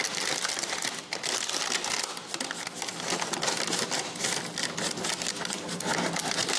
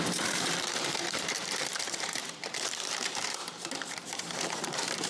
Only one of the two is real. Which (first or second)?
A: first